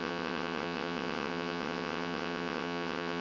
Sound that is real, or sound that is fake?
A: fake